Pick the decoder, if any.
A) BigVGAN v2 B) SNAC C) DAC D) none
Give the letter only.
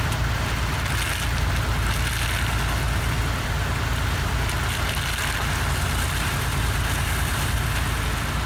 D